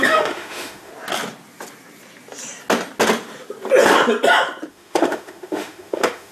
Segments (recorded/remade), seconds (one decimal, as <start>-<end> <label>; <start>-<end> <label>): 0.0-0.9 remade; 0.9-4.7 recorded; 4.7-6.3 remade